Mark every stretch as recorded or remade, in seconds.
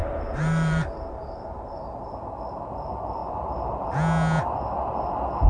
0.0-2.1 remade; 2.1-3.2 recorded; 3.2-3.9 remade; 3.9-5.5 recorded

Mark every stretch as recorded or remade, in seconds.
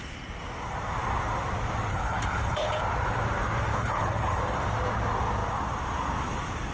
0.0-1.9 recorded; 1.9-2.8 remade; 2.8-3.7 recorded; 3.7-4.4 remade; 4.4-6.7 recorded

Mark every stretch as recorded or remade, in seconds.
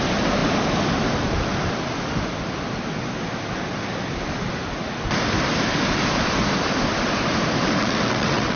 0.0-7.8 recorded; 7.8-8.6 remade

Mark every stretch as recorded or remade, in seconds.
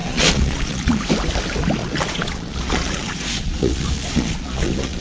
0.0-1.0 remade; 1.0-1.8 recorded; 1.8-5.0 remade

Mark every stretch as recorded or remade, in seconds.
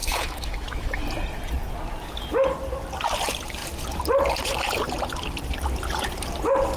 0.0-1.0 remade; 1.0-6.8 recorded